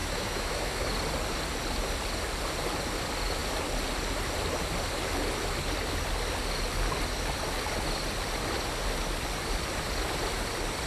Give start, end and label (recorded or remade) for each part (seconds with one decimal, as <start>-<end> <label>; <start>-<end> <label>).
0.0-0.9 remade; 0.9-10.9 recorded